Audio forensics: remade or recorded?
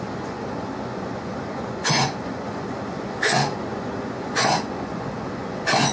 remade